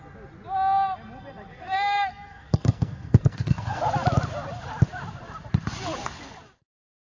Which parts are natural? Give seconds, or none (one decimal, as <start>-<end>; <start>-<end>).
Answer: 0.0-1.5; 3.8-7.1

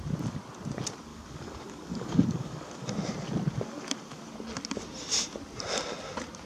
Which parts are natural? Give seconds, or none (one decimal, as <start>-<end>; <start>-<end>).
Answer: 0.0-1.1; 2.9-6.5